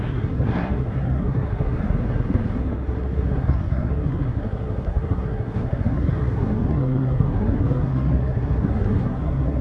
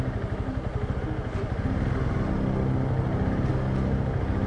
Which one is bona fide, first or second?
second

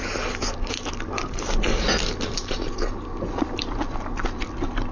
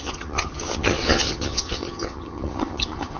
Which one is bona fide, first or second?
first